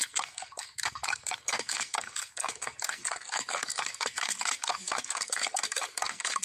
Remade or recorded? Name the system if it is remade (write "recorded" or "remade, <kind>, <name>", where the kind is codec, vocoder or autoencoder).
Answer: remade, codec, SNAC